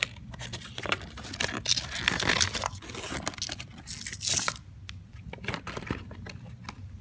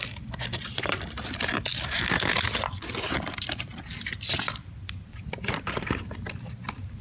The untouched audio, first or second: first